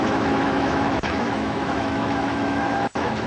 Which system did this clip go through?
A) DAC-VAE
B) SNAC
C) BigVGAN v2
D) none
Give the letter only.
A